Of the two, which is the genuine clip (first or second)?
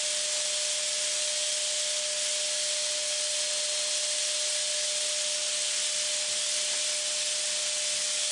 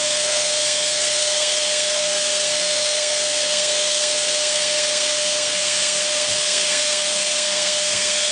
first